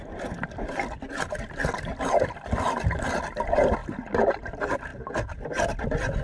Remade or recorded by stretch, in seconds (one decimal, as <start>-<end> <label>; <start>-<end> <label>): 0.0-6.2 recorded